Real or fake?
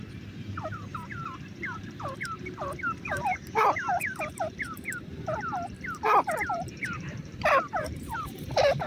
fake